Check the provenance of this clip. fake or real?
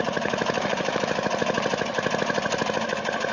real